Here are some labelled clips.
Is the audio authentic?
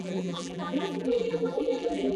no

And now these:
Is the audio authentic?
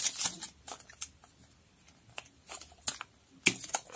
yes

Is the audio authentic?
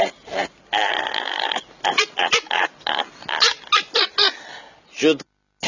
yes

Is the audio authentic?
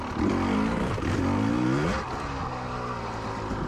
yes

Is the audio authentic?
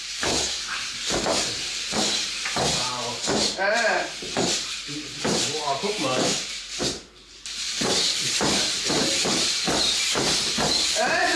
no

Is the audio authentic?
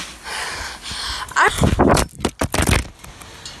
yes